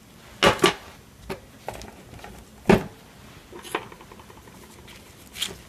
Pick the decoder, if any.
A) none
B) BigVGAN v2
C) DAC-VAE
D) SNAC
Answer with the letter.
A